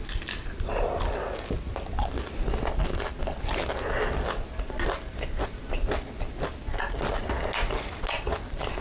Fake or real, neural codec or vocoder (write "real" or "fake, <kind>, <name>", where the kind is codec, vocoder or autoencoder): real